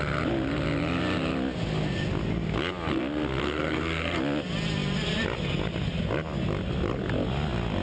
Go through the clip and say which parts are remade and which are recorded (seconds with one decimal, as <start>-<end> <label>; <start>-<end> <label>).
0.0-3.4 recorded; 3.4-4.2 remade; 4.2-7.8 recorded